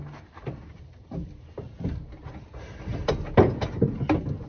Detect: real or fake real